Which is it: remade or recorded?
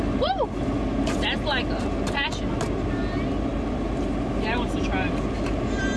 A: recorded